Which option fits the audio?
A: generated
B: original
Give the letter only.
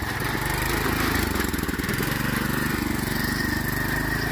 B